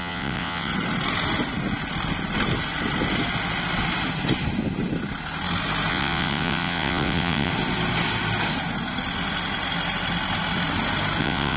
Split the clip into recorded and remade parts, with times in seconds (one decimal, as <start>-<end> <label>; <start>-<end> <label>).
0.0-0.7 remade; 0.7-5.9 recorded; 5.9-7.5 remade; 7.5-11.2 recorded; 11.2-11.6 remade